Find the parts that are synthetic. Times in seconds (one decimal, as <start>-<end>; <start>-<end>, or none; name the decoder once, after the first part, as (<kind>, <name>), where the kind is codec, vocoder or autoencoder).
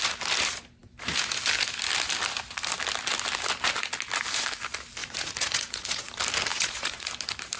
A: 5.0-6.1 (vocoder, Vocos); 6.5-7.1